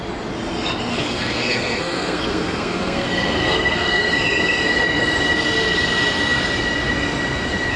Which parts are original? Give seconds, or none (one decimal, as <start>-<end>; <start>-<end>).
0.0-0.9; 4.0-7.8